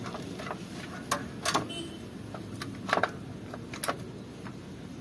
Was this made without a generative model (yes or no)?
yes